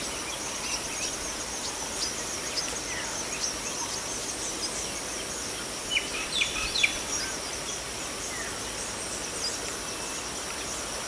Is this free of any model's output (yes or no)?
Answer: yes